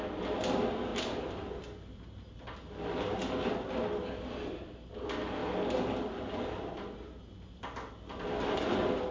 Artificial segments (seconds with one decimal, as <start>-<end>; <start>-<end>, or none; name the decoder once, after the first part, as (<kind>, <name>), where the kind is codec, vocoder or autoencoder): 0.9-1.6 (vocoder, BigVGAN v2)